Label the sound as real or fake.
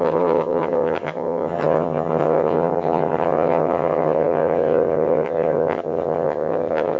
fake